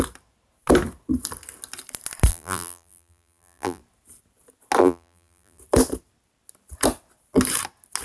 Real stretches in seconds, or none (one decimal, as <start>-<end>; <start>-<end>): 0.0-2.3; 3.8-4.8; 5.6-8.0